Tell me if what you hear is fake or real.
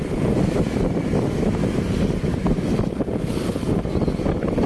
real